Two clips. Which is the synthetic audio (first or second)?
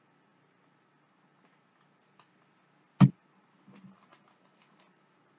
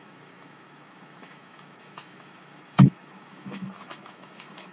second